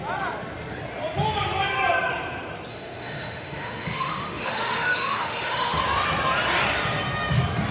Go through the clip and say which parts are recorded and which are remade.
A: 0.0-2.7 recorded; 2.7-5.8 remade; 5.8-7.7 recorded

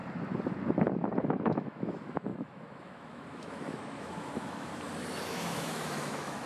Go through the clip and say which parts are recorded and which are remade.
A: 0.0-1.2 recorded; 1.2-4.7 remade; 4.7-5.3 recorded; 5.3-6.5 remade